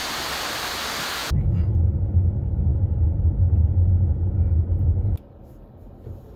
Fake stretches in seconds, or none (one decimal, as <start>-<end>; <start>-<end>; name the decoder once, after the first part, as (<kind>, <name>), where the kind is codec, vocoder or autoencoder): 1.2-1.8 (vocoder, Vocos)